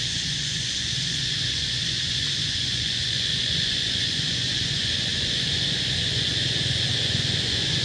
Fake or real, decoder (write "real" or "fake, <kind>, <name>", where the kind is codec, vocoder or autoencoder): fake, vocoder, Vocos